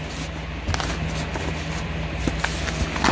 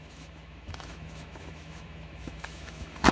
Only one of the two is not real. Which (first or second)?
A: second